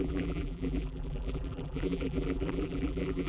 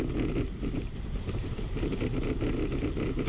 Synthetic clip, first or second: first